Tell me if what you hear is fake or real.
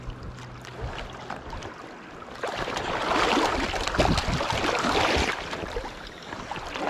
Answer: real